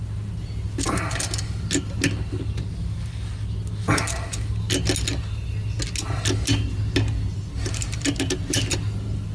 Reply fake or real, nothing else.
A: real